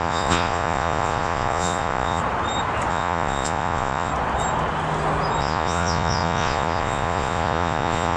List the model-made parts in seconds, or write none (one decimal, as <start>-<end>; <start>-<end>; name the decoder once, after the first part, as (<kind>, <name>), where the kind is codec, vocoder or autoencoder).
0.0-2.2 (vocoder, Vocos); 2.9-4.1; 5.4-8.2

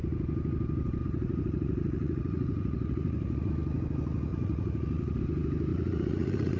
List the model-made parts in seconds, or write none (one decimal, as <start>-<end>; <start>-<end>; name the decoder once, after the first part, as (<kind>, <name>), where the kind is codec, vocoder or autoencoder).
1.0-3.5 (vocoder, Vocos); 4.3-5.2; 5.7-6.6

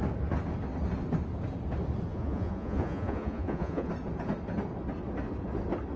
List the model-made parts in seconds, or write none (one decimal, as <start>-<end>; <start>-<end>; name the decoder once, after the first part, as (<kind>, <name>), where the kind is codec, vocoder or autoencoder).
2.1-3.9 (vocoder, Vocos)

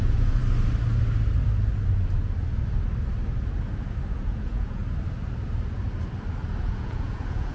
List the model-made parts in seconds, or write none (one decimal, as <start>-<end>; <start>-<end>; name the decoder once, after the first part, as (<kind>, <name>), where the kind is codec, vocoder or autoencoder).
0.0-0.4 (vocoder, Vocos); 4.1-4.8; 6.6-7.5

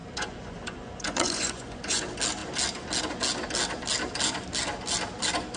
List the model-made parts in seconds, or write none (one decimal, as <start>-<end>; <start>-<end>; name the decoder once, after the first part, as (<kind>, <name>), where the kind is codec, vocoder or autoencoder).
0.0-2.0 (vocoder, Vocos)

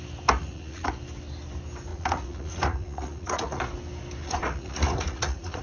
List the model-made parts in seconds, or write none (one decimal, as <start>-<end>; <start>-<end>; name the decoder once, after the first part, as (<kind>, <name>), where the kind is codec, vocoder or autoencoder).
0.4-0.9 (vocoder, Vocos); 1.9-3.6; 4.2-5.6

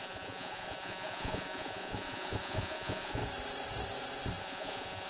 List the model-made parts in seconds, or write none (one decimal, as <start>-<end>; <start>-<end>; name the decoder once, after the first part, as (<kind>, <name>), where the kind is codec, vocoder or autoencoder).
0.0-3.2 (vocoder, Vocos); 4.4-5.1

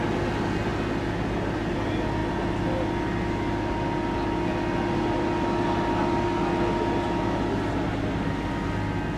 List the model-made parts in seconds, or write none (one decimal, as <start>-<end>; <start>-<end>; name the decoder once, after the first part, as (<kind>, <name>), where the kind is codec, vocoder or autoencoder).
none